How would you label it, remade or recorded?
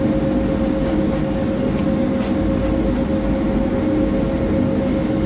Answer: recorded